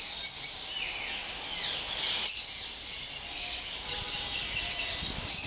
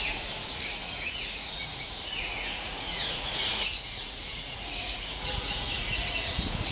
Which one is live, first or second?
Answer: first